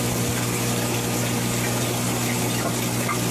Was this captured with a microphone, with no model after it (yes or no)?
yes